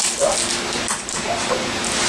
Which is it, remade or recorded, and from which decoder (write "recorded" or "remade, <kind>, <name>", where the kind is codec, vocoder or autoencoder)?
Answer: recorded